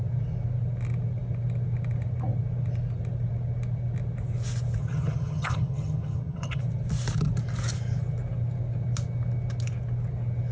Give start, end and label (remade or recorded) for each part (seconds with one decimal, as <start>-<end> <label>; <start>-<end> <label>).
0.0-4.8 recorded; 4.8-6.6 remade; 6.6-10.5 recorded

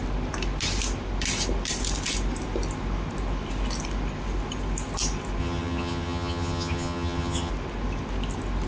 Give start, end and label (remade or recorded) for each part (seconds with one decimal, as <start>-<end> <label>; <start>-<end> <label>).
0.0-5.4 recorded; 5.4-7.5 remade; 7.5-8.7 recorded